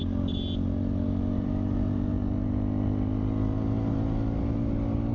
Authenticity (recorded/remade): recorded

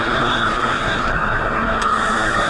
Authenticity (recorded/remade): remade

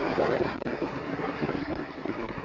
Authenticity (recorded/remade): remade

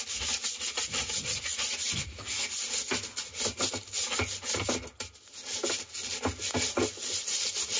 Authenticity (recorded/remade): recorded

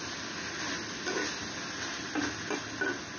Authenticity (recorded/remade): recorded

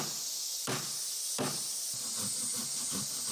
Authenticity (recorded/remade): recorded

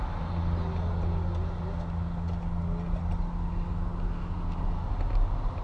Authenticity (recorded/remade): recorded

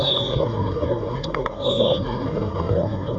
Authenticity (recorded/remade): remade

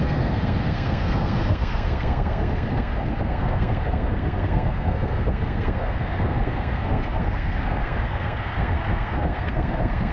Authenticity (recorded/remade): remade